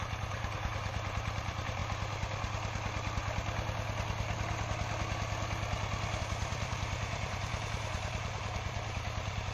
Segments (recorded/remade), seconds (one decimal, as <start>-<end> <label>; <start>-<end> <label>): 0.0-1.8 remade; 1.8-6.2 recorded; 6.2-9.5 remade